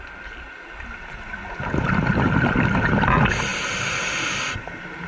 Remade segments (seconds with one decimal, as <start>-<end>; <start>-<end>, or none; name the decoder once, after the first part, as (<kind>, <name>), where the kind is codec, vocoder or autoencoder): 3.5-4.1 (vocoder, BigVGAN v2)